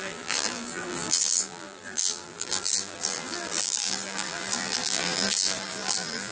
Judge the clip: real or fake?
fake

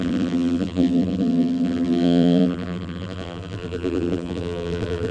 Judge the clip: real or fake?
fake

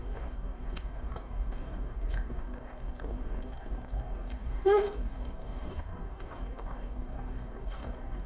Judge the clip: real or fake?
fake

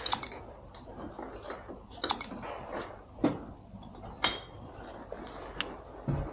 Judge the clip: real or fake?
real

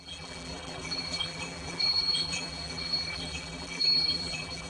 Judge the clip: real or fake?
fake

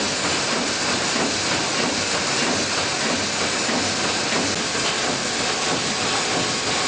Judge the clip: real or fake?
real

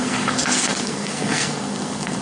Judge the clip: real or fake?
fake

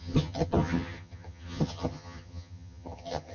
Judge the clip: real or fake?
fake